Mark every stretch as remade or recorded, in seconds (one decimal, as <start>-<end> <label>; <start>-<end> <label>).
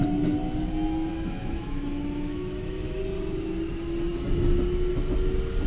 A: 0.0-1.1 recorded; 1.1-3.0 remade; 3.0-5.7 recorded